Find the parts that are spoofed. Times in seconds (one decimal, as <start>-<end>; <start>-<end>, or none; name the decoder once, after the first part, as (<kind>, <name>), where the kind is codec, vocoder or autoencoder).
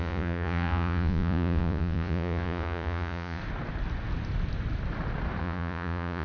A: 0.0-3.4 (vocoder, Vocos); 5.4-6.2